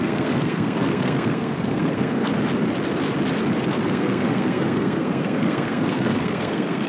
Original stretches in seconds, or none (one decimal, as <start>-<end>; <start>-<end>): 2.3-3.7